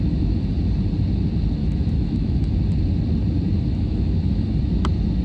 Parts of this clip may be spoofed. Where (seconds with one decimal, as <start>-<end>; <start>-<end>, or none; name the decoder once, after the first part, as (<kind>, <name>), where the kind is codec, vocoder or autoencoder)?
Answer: 1.6-2.5 (autoencoder, DAC-VAE); 3.7-4.6